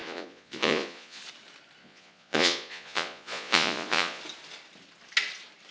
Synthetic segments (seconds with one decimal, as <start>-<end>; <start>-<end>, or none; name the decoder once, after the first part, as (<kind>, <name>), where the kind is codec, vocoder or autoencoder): 0.0-1.2 (vocoder, Vocos); 1.8-4.2